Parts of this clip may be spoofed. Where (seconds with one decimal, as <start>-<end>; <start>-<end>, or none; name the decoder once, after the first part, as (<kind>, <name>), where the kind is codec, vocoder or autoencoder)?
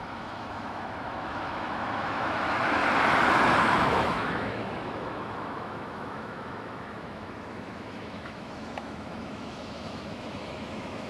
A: 0.0-2.8 (autoencoder, DAC-VAE); 3.6-11.1